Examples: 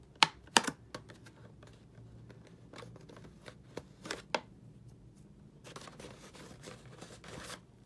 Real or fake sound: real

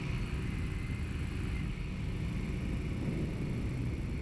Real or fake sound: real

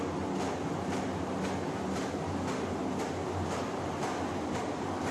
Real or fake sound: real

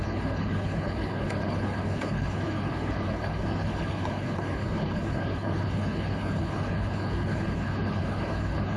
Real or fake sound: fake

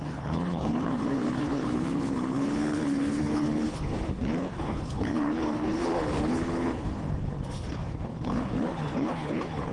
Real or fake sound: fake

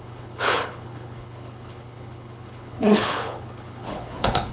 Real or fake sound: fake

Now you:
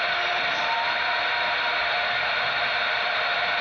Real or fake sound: real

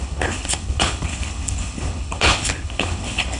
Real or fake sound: fake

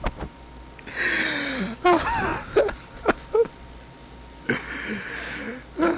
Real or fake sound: real